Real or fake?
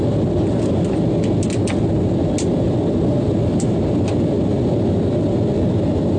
real